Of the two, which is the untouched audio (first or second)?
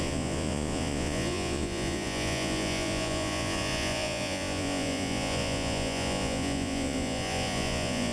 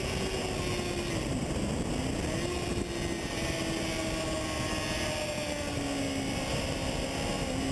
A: second